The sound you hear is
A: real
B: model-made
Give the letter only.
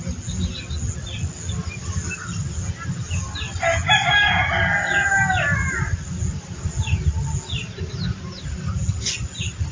A